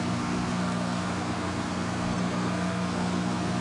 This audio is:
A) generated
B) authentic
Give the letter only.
A